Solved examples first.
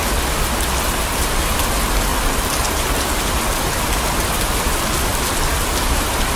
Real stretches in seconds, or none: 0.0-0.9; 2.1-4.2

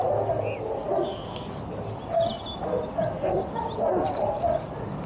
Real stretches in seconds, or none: 0.0-5.1

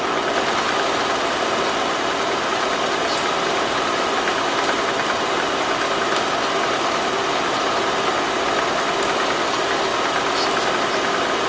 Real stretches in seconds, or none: 0.0-11.5